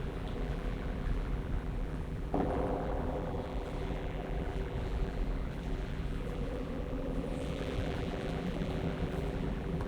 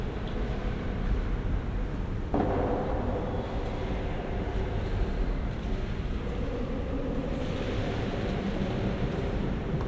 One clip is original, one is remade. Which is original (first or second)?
second